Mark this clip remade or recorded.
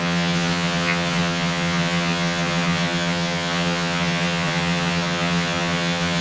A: remade